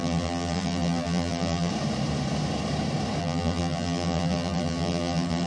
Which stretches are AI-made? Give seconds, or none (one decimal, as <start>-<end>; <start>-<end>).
0.0-1.7; 3.2-5.5